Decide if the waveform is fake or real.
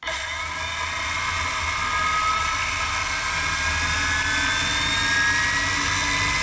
real